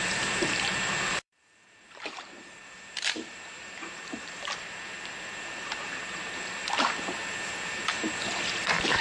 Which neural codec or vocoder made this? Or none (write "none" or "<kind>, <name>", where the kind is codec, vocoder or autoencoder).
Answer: vocoder, BigVGAN v2